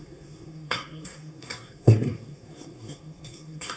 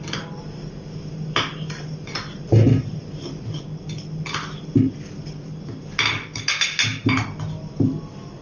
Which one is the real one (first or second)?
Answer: second